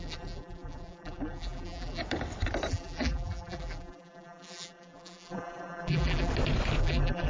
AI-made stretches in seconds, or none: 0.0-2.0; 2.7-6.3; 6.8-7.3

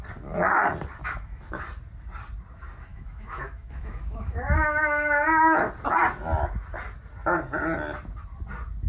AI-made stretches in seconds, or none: 1.0-1.6; 2.9-5.7

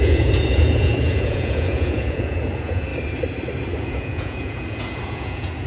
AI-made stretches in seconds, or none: 0.0-2.9; 3.8-5.7

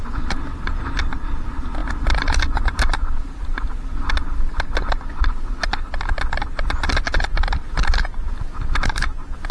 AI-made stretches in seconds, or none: none

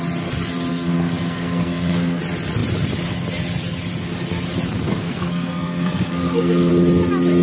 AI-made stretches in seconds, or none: 0.7-2.2; 4.9-6.7

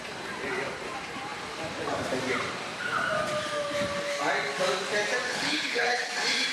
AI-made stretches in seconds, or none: 5.3-6.1